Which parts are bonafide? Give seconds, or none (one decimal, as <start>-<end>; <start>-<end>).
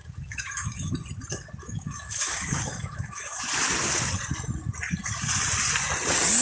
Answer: 0.9-1.6; 3.4-6.4